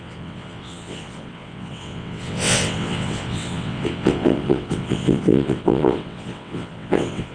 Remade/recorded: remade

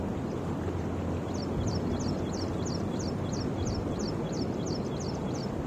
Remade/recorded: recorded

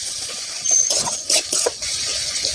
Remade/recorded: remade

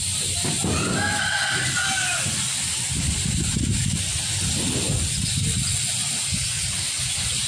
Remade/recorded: recorded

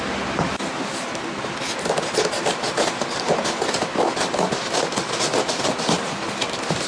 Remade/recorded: recorded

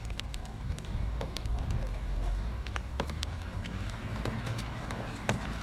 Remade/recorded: remade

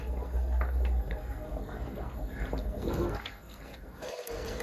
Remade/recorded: remade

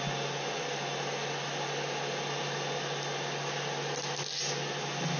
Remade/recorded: recorded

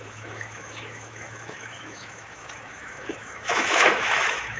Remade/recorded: remade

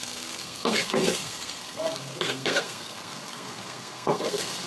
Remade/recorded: remade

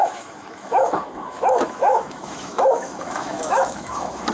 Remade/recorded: remade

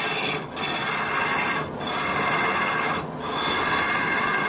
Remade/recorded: recorded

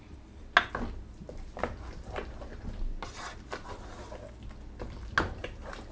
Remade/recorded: recorded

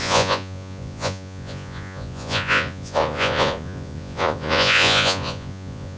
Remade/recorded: remade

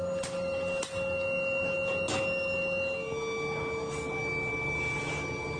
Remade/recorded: recorded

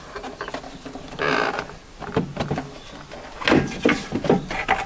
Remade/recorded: recorded